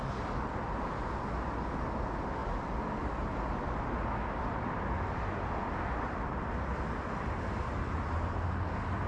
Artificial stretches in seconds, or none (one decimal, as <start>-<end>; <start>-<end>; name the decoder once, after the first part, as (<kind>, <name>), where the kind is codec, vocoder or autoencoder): none